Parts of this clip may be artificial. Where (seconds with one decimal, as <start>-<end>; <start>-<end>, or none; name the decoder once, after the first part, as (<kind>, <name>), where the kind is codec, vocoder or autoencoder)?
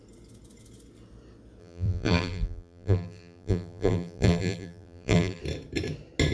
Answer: 1.6-5.4 (vocoder, BigVGAN v2)